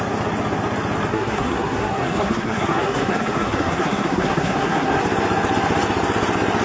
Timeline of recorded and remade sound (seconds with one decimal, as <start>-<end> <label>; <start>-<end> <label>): 0.0-1.1 recorded; 1.1-5.0 remade; 5.0-6.6 recorded